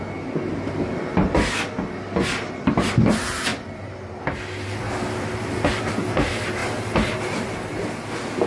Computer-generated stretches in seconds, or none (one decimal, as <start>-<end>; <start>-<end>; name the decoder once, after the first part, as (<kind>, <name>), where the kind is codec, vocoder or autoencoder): 3.5-4.2 (vocoder, BigVGAN v2); 6.6-8.0